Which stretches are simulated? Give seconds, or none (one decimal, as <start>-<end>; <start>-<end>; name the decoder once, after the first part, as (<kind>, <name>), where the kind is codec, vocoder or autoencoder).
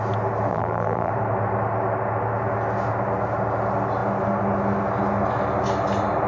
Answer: 0.5-1.1 (vocoder, BigVGAN v2)